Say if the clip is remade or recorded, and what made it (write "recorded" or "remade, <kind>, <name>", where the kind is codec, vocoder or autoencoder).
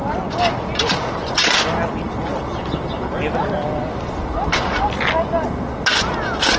recorded